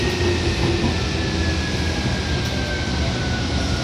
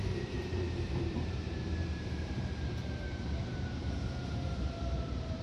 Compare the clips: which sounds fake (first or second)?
second